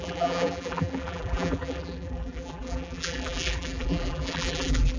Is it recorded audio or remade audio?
remade